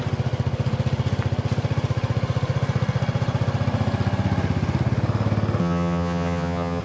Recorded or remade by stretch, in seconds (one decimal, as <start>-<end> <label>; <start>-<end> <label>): 0.0-5.6 recorded; 5.6-6.8 remade